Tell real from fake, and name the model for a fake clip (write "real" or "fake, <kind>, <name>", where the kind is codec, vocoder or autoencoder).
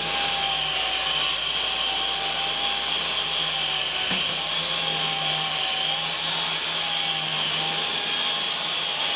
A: real